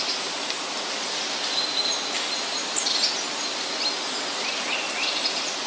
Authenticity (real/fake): real